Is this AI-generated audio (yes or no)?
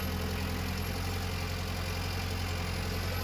no